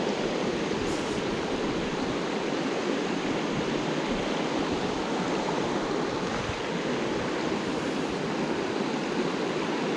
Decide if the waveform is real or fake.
real